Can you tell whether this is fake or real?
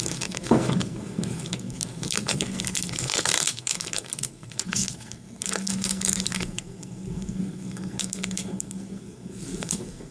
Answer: fake